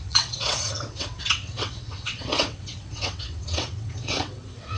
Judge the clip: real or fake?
fake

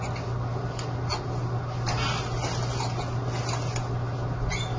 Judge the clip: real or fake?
real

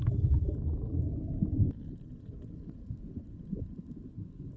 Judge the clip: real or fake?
real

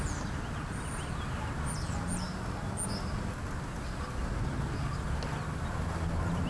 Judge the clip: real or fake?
real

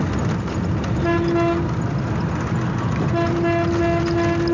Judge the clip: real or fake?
real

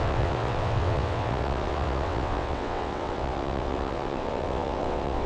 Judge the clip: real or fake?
fake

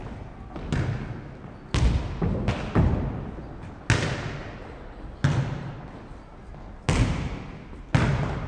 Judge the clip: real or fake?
real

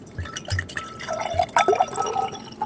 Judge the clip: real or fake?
real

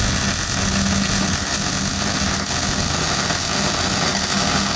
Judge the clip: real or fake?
real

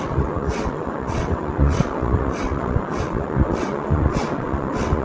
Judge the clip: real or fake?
fake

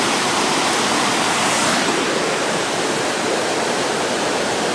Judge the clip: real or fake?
real